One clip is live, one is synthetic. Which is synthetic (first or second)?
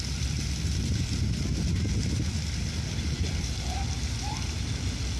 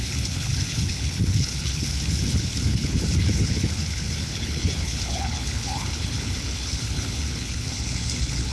second